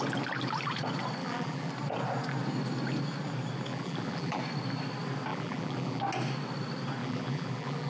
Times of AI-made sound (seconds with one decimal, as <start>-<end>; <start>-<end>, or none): 1.2-1.7; 3.7-4.4; 5.3-6.0; 7.0-7.9